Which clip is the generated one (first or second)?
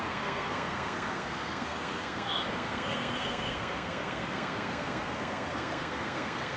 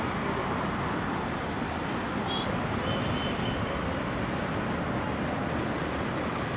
first